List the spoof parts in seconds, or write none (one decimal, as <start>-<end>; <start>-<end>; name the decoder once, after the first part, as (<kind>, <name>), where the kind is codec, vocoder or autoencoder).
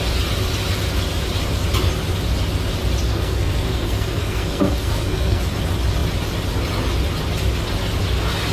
3.1-5.4 (codec, SNAC)